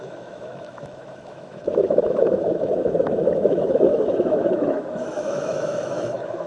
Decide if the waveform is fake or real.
fake